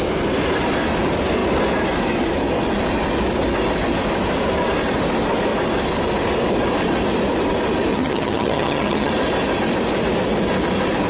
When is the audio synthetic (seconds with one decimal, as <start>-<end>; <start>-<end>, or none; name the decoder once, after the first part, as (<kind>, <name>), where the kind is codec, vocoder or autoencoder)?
7.9-9.1 (vocoder, HiFi-GAN)